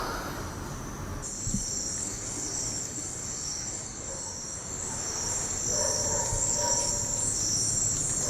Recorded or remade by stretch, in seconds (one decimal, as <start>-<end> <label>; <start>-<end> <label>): 0.0-2.0 recorded; 2.0-4.1 remade; 4.1-6.2 recorded; 6.2-6.9 remade; 6.9-8.3 recorded